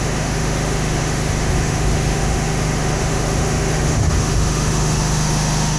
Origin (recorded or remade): remade